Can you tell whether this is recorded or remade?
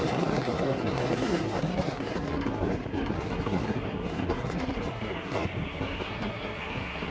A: remade